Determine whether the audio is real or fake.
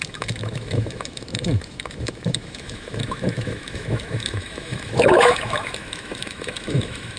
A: fake